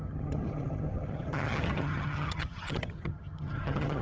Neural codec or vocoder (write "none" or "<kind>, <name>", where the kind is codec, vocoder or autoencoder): vocoder, HiFi-GAN